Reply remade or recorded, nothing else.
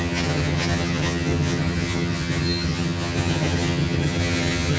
remade